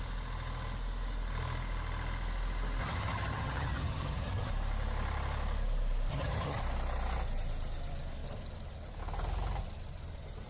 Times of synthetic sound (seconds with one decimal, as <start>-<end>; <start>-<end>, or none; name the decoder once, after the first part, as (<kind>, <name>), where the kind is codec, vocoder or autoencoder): 2.8-4.5 (vocoder, HiFi-GAN); 6.1-6.6